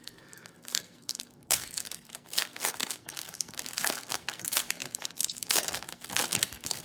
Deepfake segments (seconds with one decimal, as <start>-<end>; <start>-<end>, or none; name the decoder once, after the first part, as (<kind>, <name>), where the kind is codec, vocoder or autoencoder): 0.0-6.8 (codec, SNAC)